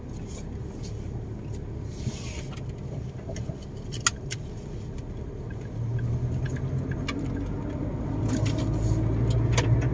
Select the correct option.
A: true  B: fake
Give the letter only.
A